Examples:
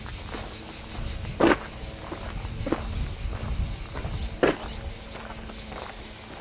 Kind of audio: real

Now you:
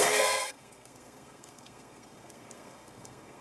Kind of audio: fake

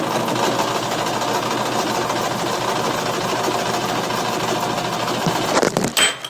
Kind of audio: real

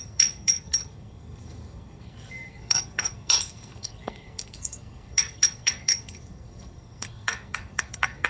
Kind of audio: fake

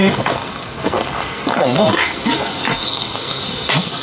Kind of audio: fake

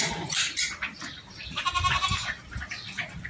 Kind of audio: real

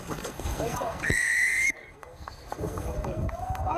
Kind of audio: fake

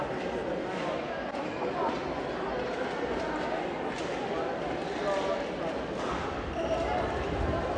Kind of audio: real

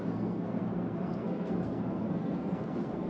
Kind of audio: fake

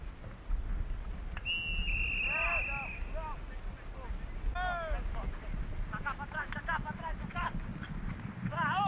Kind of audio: real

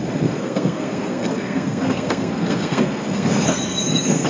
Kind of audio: fake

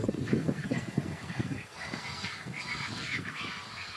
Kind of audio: fake